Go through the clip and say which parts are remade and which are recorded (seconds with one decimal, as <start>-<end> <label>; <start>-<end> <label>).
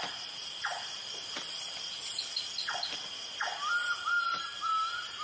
0.0-5.2 recorded